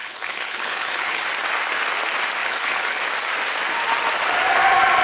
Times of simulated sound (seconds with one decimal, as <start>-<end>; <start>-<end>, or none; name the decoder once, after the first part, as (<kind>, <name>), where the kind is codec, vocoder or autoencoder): 0.0-1.2 (codec, HILCodec); 2.4-3.0